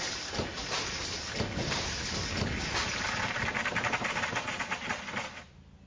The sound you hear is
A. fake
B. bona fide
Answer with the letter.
B